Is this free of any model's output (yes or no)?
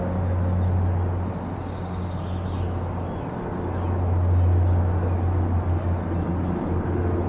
yes